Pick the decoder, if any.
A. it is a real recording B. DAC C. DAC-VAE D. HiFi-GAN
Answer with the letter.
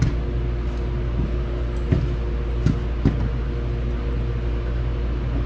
A